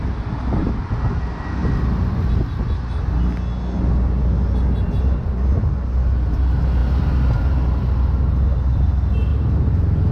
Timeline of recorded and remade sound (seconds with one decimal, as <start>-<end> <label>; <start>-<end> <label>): 0.0-9.3 recorded; 9.3-10.1 remade